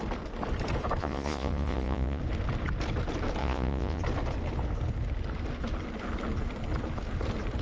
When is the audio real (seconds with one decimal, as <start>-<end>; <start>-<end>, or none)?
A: 0.0-1.0; 2.2-3.4; 4.0-7.6